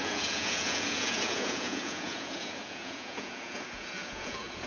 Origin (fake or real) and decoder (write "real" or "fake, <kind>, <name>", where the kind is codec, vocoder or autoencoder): fake, vocoder, Vocos